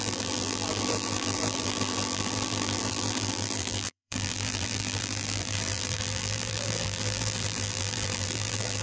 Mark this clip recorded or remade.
remade